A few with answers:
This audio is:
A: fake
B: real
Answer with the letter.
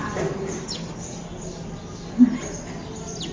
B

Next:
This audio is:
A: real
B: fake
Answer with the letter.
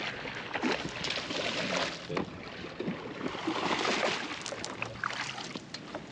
A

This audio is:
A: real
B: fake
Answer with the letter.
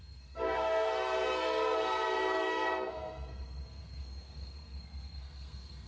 B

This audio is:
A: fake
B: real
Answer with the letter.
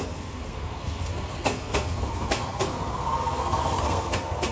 A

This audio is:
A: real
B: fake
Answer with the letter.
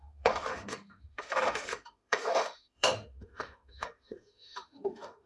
B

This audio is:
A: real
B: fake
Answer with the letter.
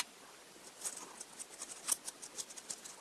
A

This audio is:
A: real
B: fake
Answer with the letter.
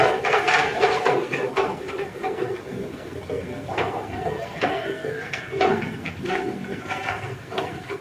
B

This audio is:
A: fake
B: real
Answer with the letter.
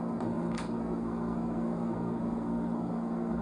A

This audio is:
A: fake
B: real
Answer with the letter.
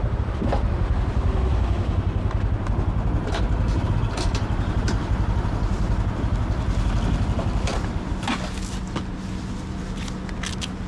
B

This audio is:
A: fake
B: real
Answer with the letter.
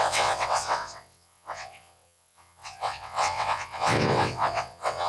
A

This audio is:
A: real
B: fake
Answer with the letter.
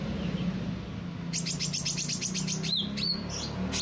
A